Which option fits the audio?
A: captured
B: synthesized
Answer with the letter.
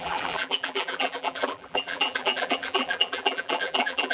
B